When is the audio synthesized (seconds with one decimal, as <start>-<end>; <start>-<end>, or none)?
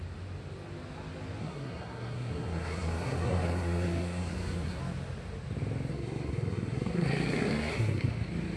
1.4-4.8; 5.9-8.1